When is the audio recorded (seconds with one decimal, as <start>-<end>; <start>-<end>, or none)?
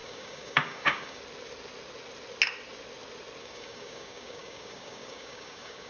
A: 1.2-3.4